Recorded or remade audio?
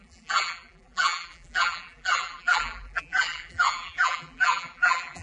remade